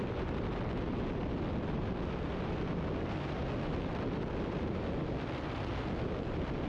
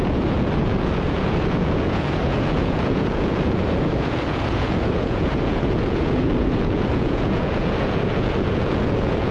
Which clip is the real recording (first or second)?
first